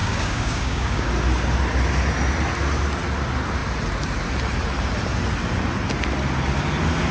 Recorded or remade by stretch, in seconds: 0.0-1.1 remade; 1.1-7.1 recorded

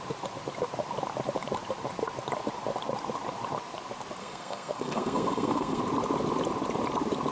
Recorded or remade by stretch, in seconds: 0.0-4.2 recorded; 4.2-5.8 remade; 5.8-7.3 recorded

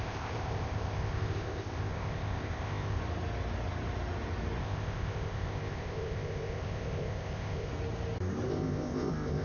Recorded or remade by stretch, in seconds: 0.0-3.0 remade; 3.0-4.6 recorded; 4.6-7.7 remade; 7.7-8.5 recorded; 8.5-9.4 remade

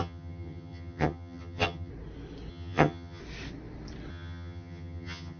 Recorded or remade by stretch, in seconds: 0.0-1.9 remade; 1.9-2.5 recorded; 2.5-3.2 remade; 3.2-4.1 recorded; 4.1-5.4 remade

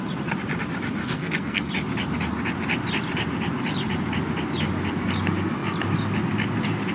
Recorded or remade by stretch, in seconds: 0.0-1.0 recorded; 1.0-1.7 remade; 1.7-6.9 recorded

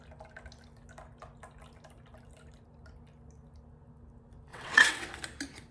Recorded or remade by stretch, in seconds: 0.0-4.5 recorded; 4.5-5.2 remade; 5.2-5.7 recorded